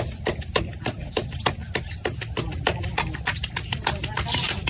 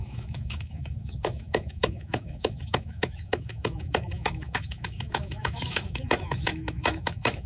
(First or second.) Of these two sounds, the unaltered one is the first